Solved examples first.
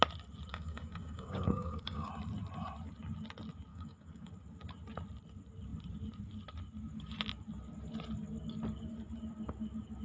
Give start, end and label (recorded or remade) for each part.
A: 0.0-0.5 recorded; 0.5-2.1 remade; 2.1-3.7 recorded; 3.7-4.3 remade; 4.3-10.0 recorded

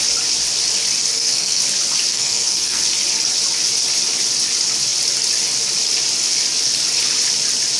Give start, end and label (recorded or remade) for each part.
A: 0.0-1.1 recorded; 1.1-1.6 remade; 1.6-2.1 recorded; 2.1-2.8 remade; 2.8-7.8 recorded